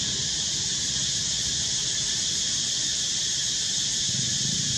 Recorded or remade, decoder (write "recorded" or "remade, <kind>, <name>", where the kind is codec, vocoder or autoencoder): recorded